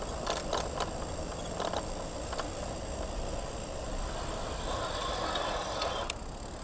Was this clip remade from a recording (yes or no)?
no